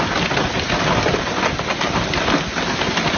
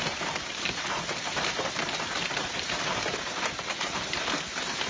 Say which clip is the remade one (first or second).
second